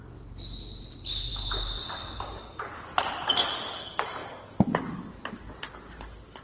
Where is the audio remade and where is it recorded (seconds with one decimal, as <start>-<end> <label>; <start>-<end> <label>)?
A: 0.0-6.4 recorded